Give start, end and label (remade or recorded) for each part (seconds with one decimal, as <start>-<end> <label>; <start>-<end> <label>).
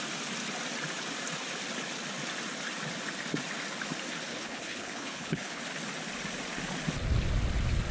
0.0-4.3 recorded; 4.3-5.6 remade; 5.6-7.9 recorded